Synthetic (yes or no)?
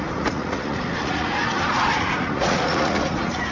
yes